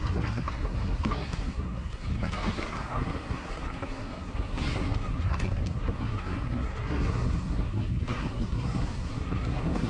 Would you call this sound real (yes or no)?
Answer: no